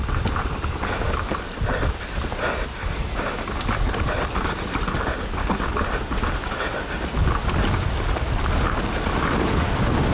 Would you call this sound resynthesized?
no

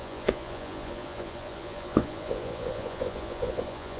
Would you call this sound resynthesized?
yes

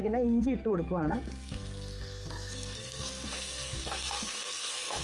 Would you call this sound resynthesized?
yes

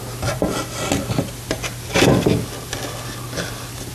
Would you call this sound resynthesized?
no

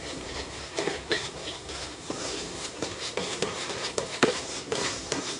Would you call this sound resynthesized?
yes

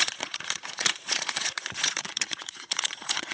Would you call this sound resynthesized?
yes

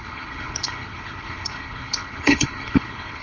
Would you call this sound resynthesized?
yes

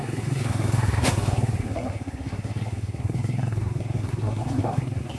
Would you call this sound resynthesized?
yes